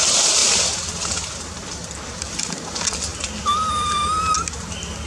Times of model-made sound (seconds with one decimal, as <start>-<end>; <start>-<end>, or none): none